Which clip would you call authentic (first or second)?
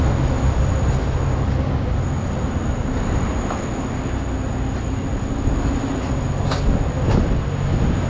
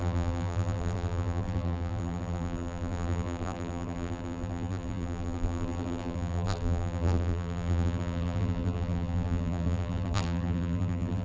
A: first